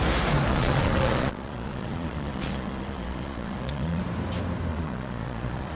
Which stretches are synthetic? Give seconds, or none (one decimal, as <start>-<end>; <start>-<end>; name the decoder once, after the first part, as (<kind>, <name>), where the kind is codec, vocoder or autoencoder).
0.5-4.0 (vocoder, Vocos); 4.7-5.8